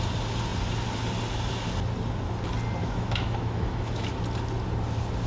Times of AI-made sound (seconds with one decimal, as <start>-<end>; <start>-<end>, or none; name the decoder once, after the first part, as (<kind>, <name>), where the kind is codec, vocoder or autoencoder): 2.8-4.1 (autoencoder, DAC-VAE)